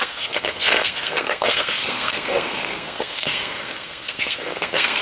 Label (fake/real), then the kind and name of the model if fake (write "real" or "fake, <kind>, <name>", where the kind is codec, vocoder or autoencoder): fake, codec, SNAC